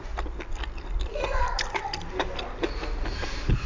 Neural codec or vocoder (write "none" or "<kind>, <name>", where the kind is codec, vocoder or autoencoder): none